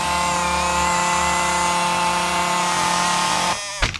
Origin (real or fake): real